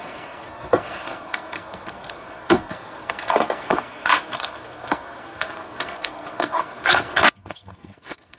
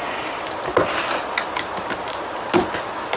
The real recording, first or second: second